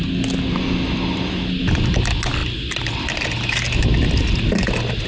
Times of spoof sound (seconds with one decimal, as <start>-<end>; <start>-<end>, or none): none